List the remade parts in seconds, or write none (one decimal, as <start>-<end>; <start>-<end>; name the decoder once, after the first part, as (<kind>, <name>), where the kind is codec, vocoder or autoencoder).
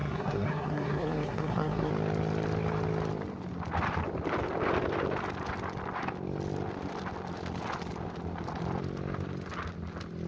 0.0-1.9 (codec, SNAC)